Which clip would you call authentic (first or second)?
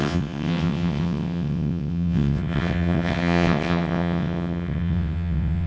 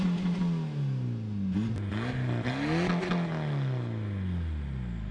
second